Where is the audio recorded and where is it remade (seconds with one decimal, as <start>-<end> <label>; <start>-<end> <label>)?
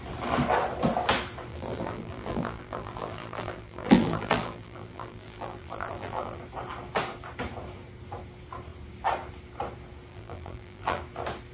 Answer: 0.0-1.5 recorded; 1.5-6.4 remade; 6.4-10.1 recorded; 10.1-11.0 remade; 11.0-11.5 recorded